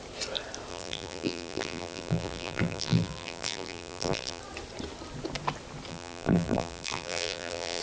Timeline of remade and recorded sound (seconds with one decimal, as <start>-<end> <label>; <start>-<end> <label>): 0.0-0.7 recorded; 0.7-4.4 remade; 4.4-5.9 recorded; 5.9-7.8 remade